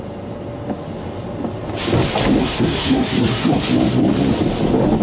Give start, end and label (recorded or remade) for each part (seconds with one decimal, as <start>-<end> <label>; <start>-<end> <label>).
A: 0.0-2.4 recorded; 2.4-3.6 remade; 3.6-5.0 recorded